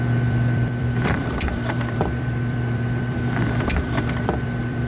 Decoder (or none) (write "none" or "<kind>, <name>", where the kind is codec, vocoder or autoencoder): vocoder, BigVGAN v2